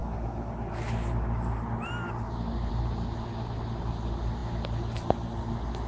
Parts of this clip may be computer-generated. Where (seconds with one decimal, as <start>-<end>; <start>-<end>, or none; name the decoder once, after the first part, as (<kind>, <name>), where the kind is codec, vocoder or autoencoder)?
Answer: none